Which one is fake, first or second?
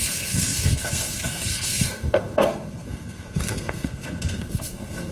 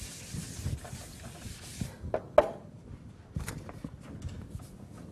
first